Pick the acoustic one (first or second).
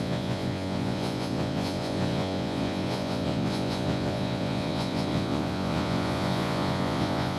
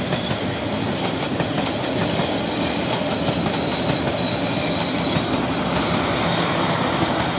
second